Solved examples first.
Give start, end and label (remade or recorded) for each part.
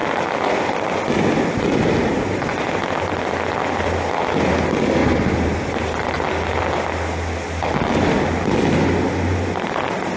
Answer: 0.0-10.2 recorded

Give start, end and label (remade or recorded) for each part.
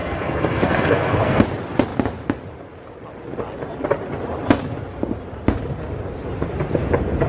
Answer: 0.0-1.4 remade; 1.4-7.3 recorded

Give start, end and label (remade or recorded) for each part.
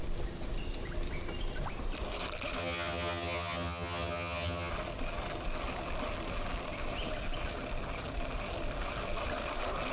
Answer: 0.0-2.6 recorded; 2.6-4.7 remade; 4.7-9.9 recorded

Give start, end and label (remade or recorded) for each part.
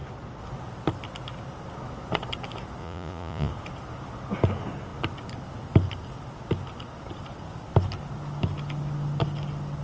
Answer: 0.0-2.8 recorded; 2.8-3.5 remade; 3.5-9.8 recorded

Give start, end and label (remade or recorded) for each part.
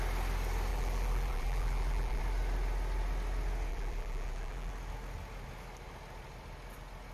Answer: 0.0-0.7 recorded; 0.7-2.2 remade; 2.2-3.7 recorded; 3.7-4.7 remade; 4.7-7.1 recorded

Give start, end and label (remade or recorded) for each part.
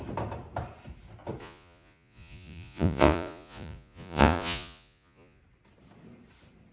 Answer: 0.0-1.4 recorded; 1.4-5.4 remade; 5.4-6.7 recorded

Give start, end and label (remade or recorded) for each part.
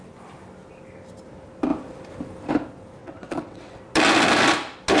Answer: 0.0-3.0 recorded; 3.0-3.8 remade; 3.8-5.0 recorded